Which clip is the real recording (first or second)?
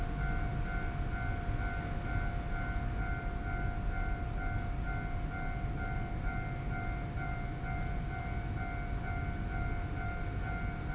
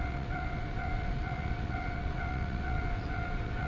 first